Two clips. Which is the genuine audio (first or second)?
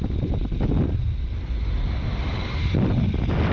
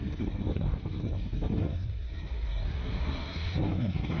first